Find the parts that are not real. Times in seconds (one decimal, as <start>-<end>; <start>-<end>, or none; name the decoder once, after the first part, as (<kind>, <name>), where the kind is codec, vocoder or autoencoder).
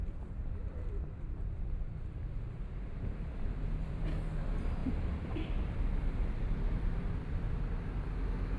0.4-4.0 (vocoder, BigVGAN v2); 4.8-7.8